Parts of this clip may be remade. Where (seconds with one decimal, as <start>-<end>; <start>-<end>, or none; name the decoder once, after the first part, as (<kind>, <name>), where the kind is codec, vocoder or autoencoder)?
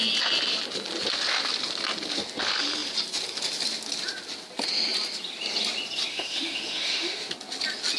6.1-7.3 (autoencoder, DAC-VAE)